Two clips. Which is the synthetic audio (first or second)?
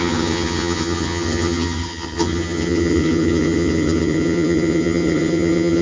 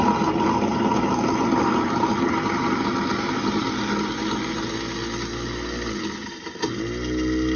first